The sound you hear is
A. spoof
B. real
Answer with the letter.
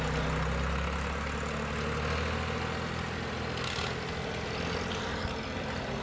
B